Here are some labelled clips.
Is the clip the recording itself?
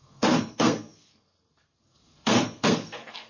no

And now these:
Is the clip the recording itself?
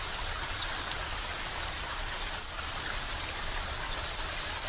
yes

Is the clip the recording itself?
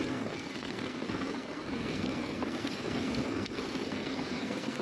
no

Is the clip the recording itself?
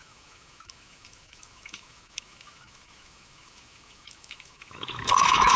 no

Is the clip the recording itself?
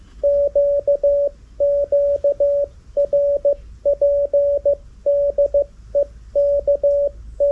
yes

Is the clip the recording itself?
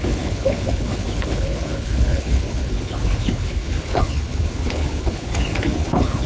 no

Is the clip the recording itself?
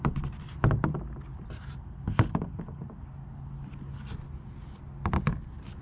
yes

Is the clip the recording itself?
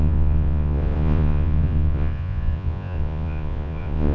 no